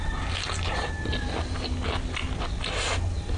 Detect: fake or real real